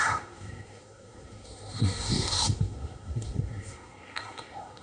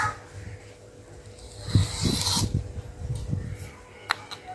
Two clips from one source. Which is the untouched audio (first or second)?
second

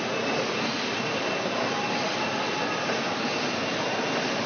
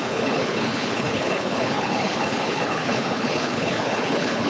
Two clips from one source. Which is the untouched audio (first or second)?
first